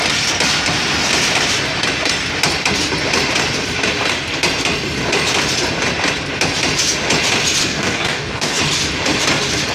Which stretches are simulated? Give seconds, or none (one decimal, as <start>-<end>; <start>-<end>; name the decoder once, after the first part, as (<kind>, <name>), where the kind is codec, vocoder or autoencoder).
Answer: 7.6-8.6 (codec, DAC)